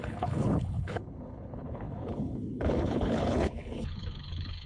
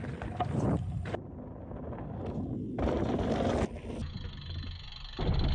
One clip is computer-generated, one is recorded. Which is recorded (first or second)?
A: second